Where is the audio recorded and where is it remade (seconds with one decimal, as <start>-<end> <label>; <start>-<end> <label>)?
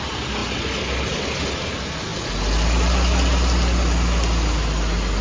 0.0-5.2 recorded